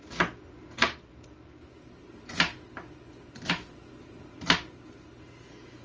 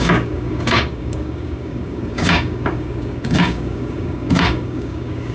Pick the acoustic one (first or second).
first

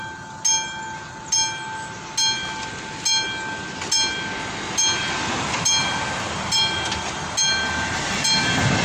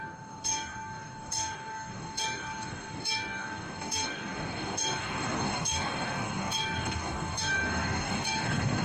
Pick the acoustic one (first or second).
first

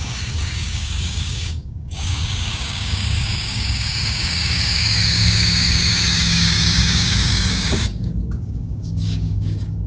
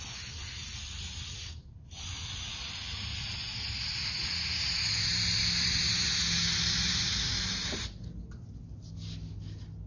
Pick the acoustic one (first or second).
second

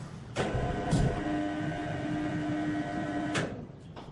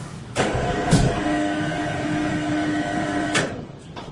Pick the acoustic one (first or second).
first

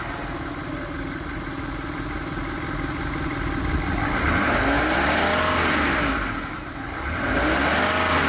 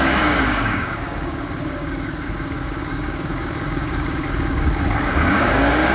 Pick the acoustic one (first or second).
first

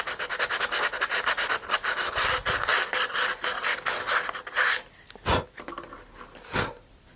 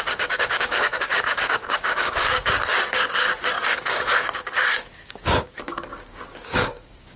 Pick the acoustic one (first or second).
first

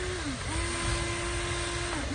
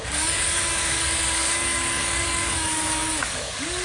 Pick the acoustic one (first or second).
first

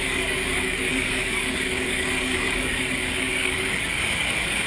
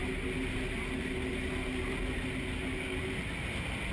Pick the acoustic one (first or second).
second